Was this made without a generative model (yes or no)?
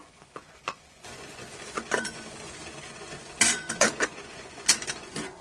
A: no